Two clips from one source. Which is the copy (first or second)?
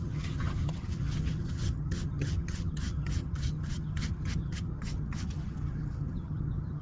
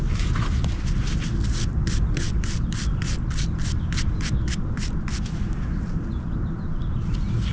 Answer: first